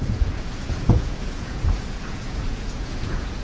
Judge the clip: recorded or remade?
remade